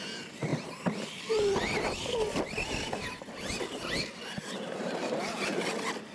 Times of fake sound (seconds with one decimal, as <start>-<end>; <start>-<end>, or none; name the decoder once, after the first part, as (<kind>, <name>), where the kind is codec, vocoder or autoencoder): none